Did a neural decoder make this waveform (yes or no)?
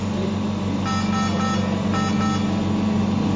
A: no